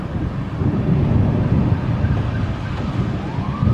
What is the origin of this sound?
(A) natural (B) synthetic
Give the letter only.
A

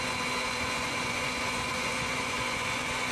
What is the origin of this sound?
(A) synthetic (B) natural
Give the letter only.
A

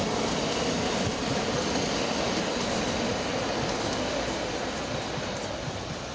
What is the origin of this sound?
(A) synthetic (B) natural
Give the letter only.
B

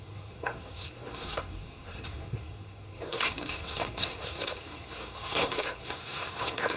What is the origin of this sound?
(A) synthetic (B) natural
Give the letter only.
A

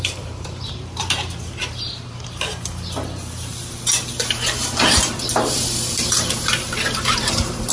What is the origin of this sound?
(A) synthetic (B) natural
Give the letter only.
A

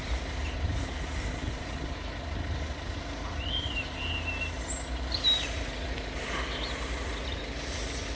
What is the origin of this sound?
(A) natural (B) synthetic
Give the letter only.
A